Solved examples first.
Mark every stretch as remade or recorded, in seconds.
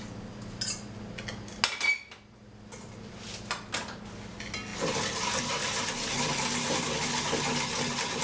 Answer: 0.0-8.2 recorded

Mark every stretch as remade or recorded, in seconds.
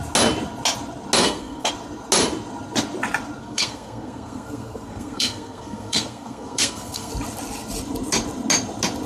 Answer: 0.0-1.2 recorded; 1.2-1.7 remade; 1.7-3.4 recorded; 3.4-7.1 remade; 7.1-9.1 recorded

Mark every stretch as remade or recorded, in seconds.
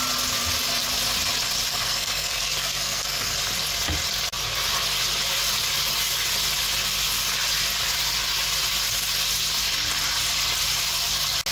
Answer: 0.0-1.7 recorded; 1.7-3.4 remade; 3.4-11.5 recorded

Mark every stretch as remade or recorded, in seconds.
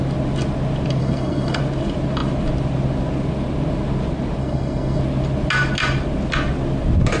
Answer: 0.0-1.0 recorded; 1.0-1.6 remade; 1.6-4.4 recorded; 4.4-5.0 remade; 5.0-7.2 recorded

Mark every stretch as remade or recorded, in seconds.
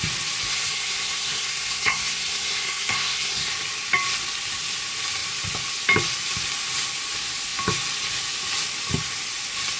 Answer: 0.0-0.5 recorded; 0.5-3.5 remade; 3.5-9.8 recorded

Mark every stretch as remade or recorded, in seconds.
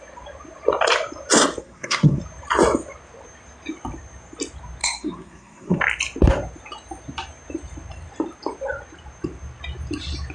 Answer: 0.0-1.6 recorded; 1.6-2.2 remade; 2.2-4.8 recorded; 4.8-5.8 remade; 5.8-10.3 recorded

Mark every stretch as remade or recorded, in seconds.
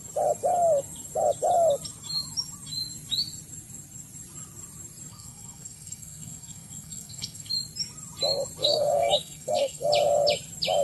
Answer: 0.0-5.1 recorded; 5.1-7.5 remade; 7.5-8.6 recorded; 8.6-9.9 remade; 9.9-10.8 recorded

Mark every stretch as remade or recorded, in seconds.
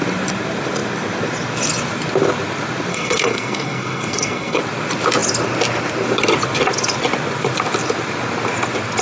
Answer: 0.0-2.9 recorded; 2.9-4.6 remade; 4.6-9.0 recorded